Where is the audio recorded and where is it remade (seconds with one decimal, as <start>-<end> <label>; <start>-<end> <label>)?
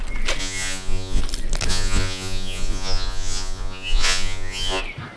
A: 0.0-0.4 recorded; 0.4-1.2 remade; 1.2-1.7 recorded; 1.7-4.8 remade; 4.8-5.2 recorded